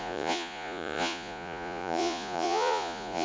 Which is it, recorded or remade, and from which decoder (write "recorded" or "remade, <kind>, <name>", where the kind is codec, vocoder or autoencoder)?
remade, vocoder, Vocos